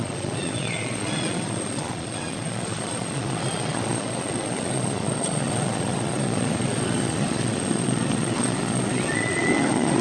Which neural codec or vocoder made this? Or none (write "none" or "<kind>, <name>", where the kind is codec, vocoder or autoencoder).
vocoder, Vocos